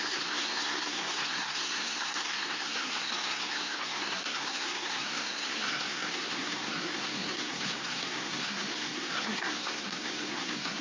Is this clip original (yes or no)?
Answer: no